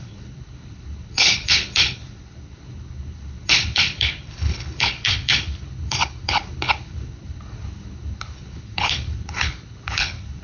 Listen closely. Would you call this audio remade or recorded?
remade